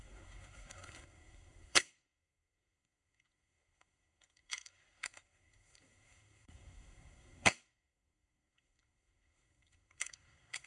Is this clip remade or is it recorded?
remade